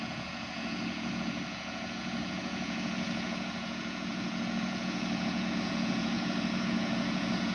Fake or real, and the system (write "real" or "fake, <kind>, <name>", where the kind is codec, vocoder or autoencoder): fake, vocoder, Vocos